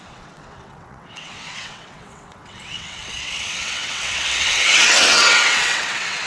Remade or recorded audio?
remade